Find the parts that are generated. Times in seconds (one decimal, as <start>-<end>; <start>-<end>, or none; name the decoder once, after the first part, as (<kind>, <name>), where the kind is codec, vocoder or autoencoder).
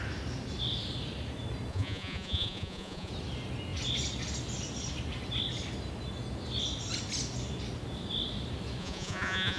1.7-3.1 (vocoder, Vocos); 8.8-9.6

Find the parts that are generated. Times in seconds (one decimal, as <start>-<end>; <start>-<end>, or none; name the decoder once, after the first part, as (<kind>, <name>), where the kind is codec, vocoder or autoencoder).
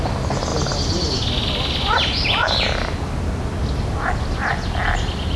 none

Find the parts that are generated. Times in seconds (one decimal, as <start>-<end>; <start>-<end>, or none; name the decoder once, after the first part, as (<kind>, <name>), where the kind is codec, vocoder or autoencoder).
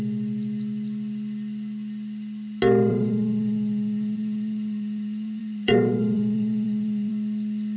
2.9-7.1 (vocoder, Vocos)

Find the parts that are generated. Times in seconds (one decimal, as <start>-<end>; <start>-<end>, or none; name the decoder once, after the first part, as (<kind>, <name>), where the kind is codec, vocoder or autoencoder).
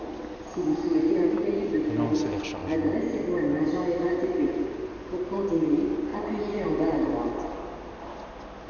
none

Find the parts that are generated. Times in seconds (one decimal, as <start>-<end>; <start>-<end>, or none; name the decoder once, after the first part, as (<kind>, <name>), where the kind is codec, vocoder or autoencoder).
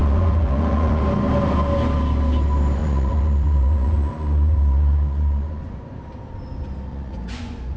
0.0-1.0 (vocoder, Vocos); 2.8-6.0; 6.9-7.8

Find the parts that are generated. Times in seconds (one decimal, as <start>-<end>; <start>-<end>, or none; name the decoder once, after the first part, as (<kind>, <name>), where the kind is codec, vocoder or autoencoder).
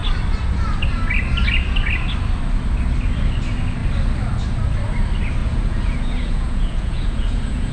5.4-7.7 (vocoder, Vocos)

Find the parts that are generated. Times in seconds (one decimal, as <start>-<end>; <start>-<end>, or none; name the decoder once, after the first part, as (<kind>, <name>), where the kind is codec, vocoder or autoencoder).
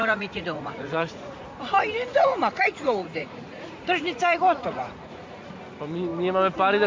0.0-1.7 (vocoder, Vocos); 2.1-5.5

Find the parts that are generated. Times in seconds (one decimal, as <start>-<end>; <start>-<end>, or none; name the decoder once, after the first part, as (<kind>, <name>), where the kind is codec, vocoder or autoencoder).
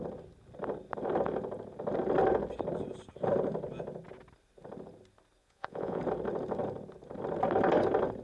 5.4-6.0 (vocoder, Vocos)